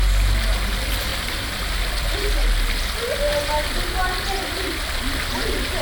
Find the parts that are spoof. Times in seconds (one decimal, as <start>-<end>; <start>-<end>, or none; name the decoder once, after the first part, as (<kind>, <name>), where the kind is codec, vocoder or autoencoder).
1.1-2.3 (vocoder, BigVGAN v2)

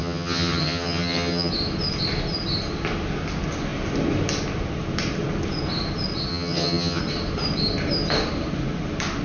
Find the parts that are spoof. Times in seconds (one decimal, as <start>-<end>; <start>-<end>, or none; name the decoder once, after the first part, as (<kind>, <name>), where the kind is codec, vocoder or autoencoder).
0.0-1.5 (vocoder, HiFi-GAN); 6.3-7.0

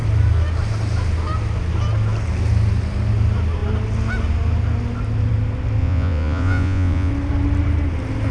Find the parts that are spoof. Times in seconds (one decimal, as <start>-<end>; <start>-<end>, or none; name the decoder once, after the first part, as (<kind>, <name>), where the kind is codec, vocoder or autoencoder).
5.8-7.1 (vocoder, Vocos)

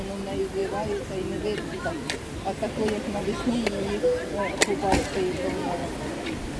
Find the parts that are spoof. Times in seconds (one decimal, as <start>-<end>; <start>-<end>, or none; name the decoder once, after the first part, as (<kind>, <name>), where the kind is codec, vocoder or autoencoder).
none